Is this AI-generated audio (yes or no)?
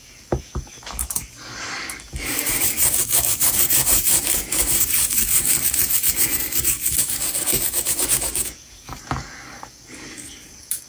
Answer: yes